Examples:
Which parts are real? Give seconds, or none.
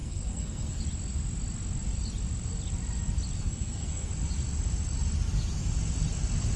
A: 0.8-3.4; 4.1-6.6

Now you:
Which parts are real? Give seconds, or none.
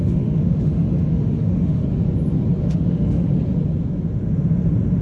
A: 1.8-2.6; 3.3-5.0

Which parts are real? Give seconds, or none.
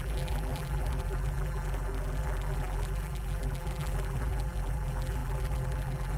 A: none